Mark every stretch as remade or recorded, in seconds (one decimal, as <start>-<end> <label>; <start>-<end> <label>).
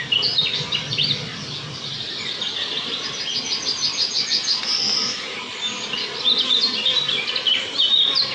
0.0-8.3 recorded